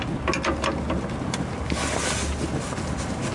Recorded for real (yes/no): yes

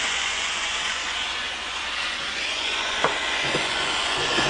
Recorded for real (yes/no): no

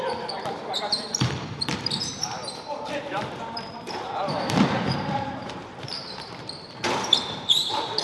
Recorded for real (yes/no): no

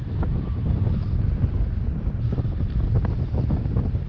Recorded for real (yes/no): yes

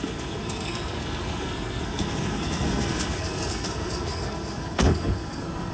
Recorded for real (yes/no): no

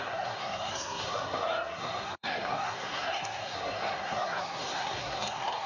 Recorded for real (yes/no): no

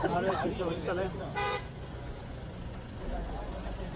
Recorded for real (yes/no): no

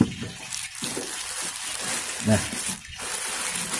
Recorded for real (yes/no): yes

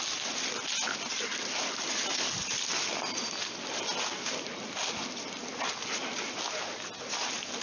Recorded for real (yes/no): yes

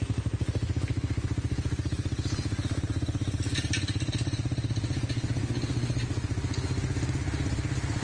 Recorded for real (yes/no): yes